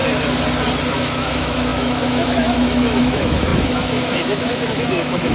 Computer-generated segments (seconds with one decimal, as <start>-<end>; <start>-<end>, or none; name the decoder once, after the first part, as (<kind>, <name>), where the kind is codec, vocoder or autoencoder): 0.9-5.3 (autoencoder, DAC-VAE)